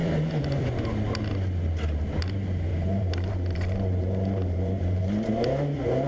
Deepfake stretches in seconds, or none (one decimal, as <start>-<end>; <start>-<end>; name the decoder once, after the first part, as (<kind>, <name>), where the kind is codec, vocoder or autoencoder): 0.0-0.8 (vocoder, BigVGAN v2); 2.7-5.3